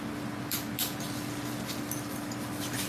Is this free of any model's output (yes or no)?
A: yes